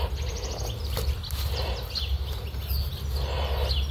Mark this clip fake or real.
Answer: real